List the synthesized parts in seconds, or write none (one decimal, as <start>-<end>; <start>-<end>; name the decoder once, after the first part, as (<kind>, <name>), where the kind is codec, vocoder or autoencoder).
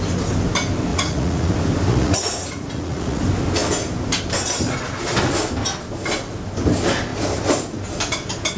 0.9-1.5 (vocoder, Vocos); 1.9-3.2